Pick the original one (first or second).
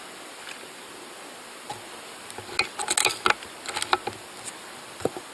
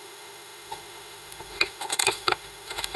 first